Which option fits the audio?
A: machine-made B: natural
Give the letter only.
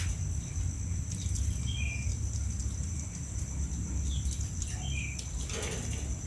B